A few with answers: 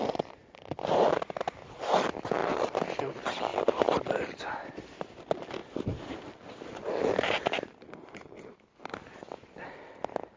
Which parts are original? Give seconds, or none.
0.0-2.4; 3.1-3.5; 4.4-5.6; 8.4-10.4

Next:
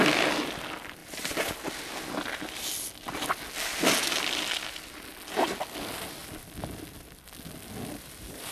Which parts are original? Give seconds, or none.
0.0-1.0; 1.8-6.2; 7.2-8.5

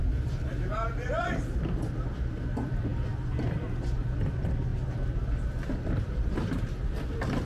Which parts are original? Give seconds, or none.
none

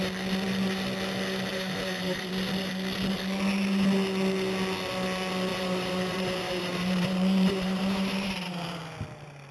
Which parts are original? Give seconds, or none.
0.0-1.5; 2.3-5.5; 8.8-9.5

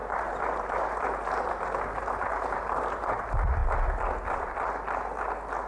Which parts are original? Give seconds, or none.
3.1-5.7

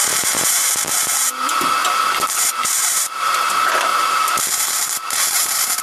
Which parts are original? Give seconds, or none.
0.7-1.8; 3.5-3.9